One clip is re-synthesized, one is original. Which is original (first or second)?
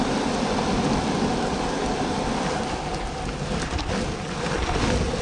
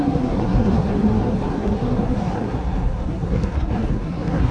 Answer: first